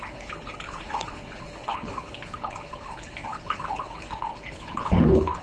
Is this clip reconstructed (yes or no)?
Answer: yes